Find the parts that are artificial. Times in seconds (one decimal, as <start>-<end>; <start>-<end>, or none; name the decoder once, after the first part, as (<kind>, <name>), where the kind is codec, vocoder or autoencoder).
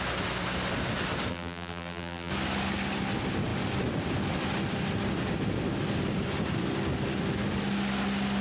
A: 1.3-2.3 (vocoder, BigVGAN v2)